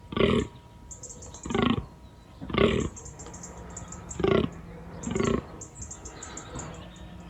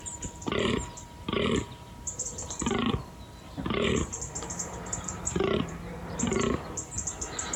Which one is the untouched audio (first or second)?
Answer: first